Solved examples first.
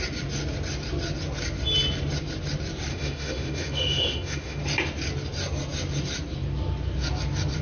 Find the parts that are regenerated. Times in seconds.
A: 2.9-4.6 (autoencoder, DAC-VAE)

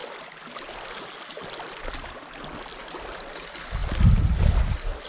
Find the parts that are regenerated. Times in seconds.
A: none